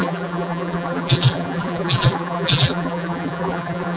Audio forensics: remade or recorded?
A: remade